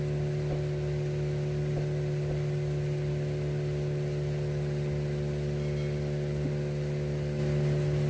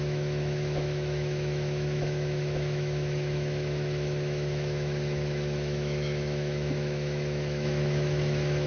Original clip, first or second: first